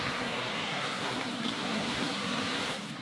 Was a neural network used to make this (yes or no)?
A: yes